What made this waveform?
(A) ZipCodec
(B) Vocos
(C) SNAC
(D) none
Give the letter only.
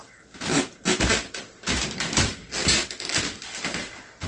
D